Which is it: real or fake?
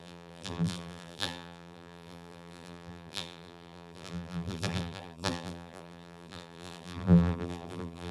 fake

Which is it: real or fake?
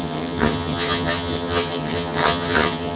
fake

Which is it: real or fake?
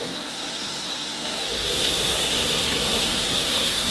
fake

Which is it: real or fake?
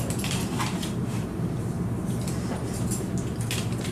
fake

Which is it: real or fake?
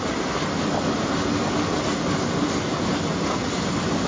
real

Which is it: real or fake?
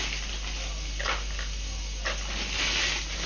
real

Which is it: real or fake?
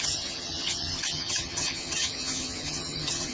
fake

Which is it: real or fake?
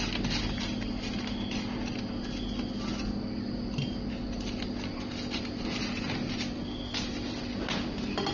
real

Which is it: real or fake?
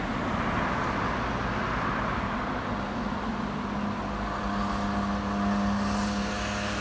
real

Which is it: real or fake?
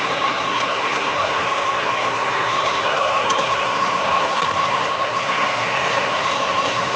fake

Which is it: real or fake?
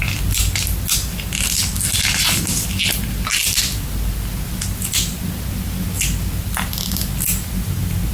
real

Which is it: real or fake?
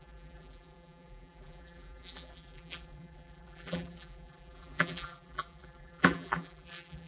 fake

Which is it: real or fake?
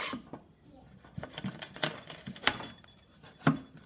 real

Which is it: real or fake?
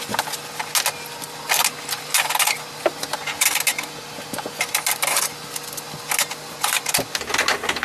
real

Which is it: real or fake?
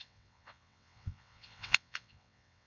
fake